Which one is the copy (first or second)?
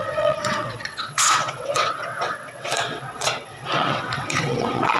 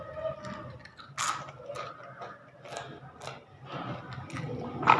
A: first